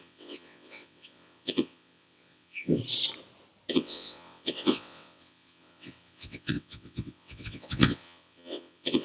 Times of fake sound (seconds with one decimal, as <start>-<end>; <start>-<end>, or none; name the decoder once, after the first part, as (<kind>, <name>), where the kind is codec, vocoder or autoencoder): 0.0-2.8 (vocoder, WaveNeXt); 3.7-9.0